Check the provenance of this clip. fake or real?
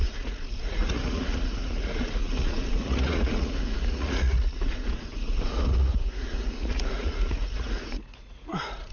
fake